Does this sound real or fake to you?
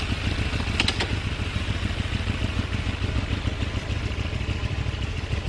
real